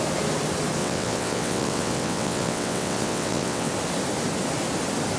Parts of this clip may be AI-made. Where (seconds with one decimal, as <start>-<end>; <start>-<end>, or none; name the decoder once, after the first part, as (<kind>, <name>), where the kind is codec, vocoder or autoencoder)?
0.8-3.7 (vocoder, WaveNeXt)